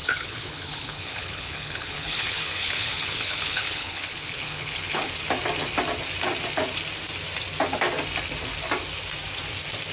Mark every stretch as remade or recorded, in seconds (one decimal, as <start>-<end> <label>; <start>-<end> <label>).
0.0-5.1 remade; 5.1-9.9 recorded